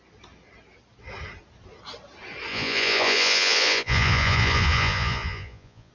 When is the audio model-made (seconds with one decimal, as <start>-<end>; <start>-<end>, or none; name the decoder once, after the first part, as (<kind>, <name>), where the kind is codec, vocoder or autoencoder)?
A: 2.5-5.9 (vocoder, Vocos)